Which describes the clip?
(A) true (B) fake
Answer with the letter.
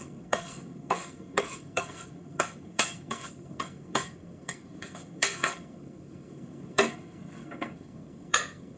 B